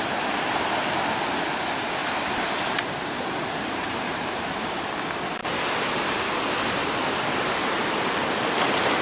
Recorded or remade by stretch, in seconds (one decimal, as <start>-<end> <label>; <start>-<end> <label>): 0.0-2.0 recorded; 2.0-4.8 remade; 4.8-7.6 recorded; 7.6-8.2 remade; 8.2-9.0 recorded